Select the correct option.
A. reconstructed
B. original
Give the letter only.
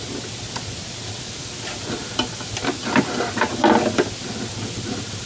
B